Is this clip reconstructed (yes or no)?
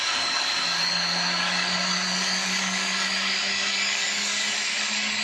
yes